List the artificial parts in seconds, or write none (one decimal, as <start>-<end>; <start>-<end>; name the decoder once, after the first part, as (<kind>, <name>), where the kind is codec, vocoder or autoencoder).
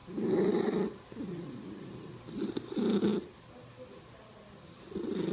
none